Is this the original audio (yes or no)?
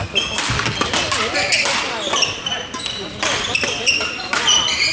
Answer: yes